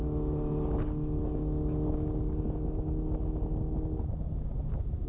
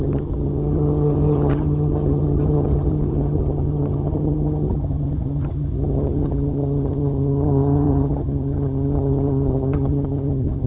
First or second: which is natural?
first